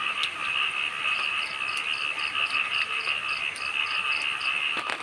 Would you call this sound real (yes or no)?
yes